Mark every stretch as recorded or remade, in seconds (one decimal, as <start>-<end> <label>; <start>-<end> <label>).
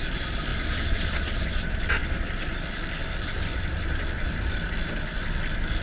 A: 0.0-5.8 remade